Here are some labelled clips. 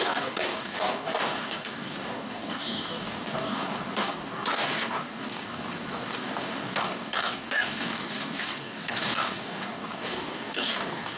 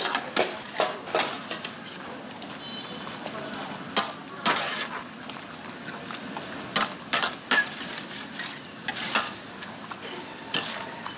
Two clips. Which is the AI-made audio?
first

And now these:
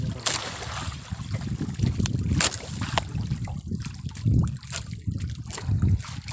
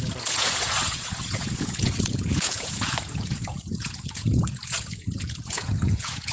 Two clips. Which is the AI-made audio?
second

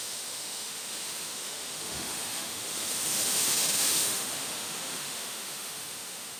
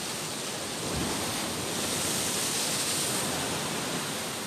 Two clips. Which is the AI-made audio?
first